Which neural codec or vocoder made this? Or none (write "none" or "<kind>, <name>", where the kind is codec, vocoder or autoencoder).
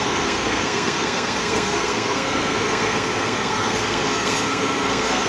codec, SNAC